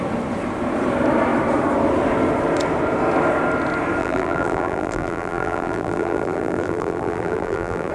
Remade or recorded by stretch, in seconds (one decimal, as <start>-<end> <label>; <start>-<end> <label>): 0.0-4.0 recorded; 4.0-7.9 remade